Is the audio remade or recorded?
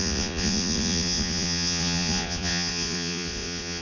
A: remade